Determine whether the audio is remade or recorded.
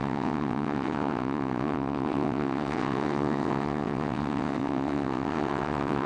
remade